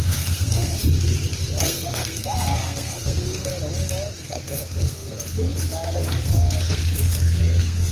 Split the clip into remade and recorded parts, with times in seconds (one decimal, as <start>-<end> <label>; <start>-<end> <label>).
0.0-0.7 remade; 0.7-1.6 recorded; 1.6-3.5 remade; 3.5-4.3 recorded; 4.3-7.9 remade